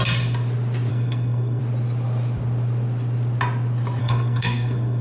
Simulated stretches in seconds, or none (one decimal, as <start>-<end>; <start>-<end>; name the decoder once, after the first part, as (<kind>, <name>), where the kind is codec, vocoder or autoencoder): 0.9-1.6 (codec, SNAC); 4.0-5.0